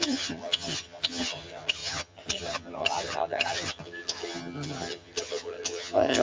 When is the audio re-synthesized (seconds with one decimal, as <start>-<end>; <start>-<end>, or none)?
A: 0.0-6.2